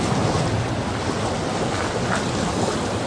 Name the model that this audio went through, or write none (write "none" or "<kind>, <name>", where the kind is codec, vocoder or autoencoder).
none